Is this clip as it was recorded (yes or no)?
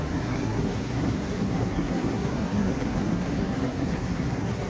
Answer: no